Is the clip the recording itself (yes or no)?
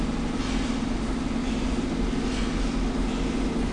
yes